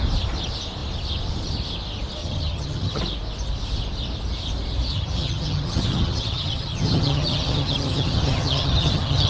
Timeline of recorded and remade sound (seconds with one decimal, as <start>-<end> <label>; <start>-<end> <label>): 0.0-2.2 recorded; 2.2-3.0 remade; 3.0-4.9 recorded; 4.9-9.3 remade